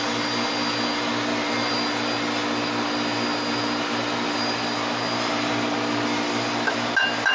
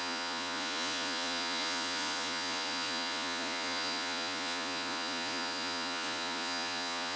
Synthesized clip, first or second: second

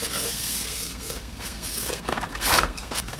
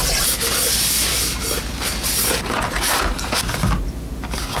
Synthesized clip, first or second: first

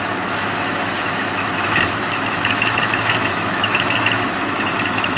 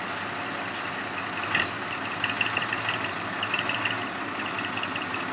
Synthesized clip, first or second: first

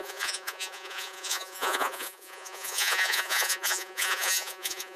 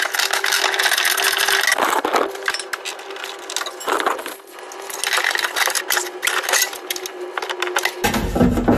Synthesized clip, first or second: first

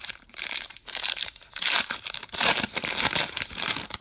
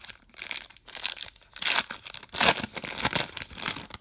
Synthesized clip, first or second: first